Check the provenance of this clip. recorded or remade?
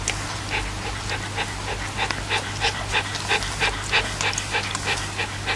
recorded